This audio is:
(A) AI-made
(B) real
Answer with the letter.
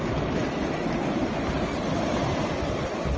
A